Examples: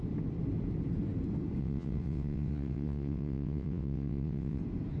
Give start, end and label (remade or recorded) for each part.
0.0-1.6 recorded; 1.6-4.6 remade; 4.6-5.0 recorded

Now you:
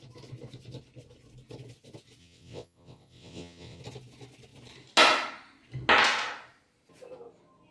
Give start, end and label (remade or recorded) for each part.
0.0-2.2 recorded; 2.2-3.8 remade; 3.8-7.7 recorded

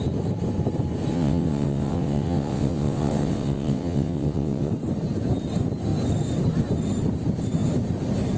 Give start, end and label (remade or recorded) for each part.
0.0-1.1 recorded; 1.1-4.7 remade; 4.7-8.4 recorded

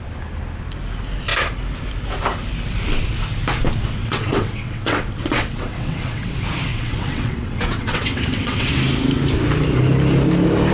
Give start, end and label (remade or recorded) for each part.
0.0-4.0 recorded; 4.0-6.3 remade; 6.3-6.7 recorded; 6.7-8.7 remade; 8.7-10.7 recorded

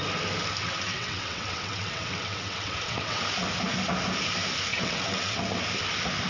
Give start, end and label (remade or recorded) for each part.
0.0-0.6 recorded; 0.6-3.2 remade; 3.2-4.7 recorded; 4.7-5.4 remade; 5.4-6.3 recorded

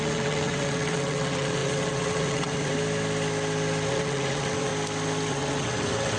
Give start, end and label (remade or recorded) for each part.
0.0-2.7 remade; 2.7-3.9 recorded; 3.9-4.7 remade; 4.7-5.3 recorded; 5.3-6.2 remade